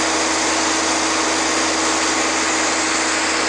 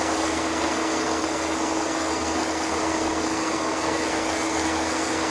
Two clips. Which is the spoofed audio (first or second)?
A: second